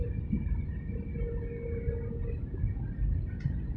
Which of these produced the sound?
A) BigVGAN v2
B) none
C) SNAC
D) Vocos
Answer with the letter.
B